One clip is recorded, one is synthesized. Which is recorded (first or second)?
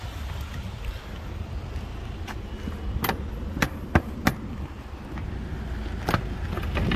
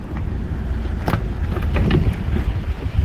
first